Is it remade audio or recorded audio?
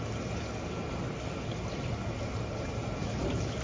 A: recorded